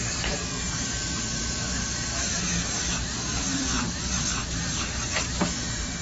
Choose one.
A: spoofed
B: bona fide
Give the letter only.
A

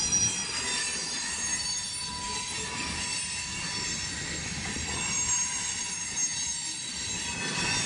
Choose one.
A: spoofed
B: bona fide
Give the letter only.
B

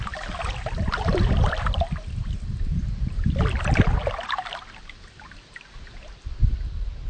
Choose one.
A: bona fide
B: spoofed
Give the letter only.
B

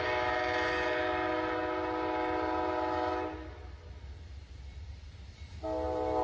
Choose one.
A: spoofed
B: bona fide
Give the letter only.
B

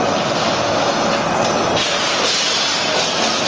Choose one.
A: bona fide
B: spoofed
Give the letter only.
A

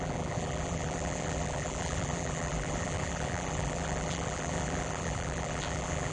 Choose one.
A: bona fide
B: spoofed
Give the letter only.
B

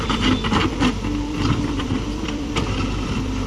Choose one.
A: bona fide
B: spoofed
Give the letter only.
B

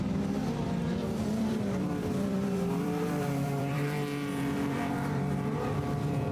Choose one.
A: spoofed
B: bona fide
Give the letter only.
A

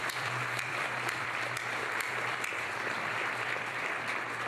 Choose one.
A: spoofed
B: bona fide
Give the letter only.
A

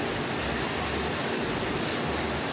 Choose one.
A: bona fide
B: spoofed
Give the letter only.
A